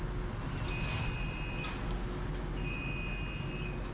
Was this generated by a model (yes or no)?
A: no